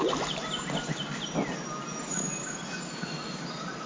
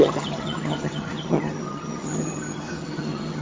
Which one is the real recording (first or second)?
first